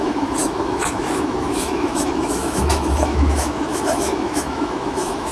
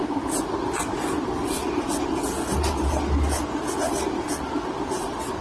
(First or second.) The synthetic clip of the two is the first